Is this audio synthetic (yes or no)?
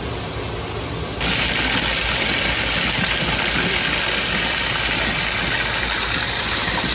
no